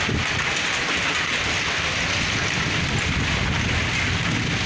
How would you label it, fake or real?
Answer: real